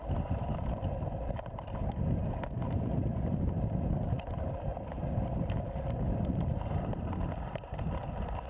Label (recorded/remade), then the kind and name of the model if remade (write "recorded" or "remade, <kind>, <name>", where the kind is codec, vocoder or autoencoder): recorded